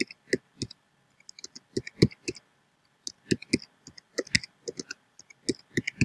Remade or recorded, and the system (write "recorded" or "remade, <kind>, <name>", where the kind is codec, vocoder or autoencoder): recorded